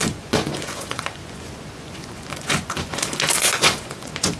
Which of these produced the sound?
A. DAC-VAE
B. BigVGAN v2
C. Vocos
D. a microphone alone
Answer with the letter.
C